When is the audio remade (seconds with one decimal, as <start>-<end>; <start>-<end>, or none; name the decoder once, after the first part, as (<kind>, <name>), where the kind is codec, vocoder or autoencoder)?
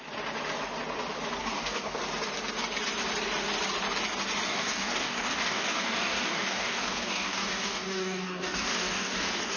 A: 1.4-2.0 (codec, DAC); 4.5-9.6